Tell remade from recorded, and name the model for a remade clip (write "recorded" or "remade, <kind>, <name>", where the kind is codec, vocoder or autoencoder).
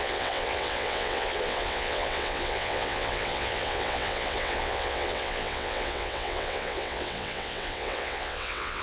remade, vocoder, WaveNeXt